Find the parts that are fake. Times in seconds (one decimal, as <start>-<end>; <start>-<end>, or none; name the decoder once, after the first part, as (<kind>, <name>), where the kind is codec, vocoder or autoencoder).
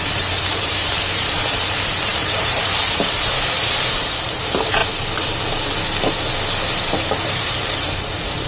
0.0-4.8 (vocoder, BigVGAN v2); 7.1-8.5